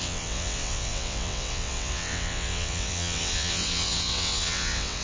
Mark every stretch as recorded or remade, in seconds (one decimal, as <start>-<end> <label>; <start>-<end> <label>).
0.0-5.0 remade